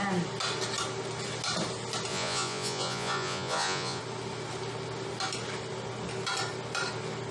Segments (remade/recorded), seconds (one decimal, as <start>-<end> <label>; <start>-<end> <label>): 0.0-2.1 recorded; 2.1-4.0 remade; 4.0-7.3 recorded